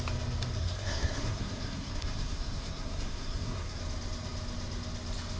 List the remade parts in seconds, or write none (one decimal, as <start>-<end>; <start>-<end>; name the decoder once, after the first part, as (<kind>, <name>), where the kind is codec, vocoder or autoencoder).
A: 0.6-3.8 (codec, SNAC)